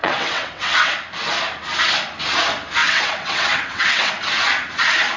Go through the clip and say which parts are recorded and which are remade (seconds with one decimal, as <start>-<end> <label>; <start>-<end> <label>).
0.0-0.9 remade; 0.9-2.8 recorded; 2.8-4.1 remade; 4.1-5.2 recorded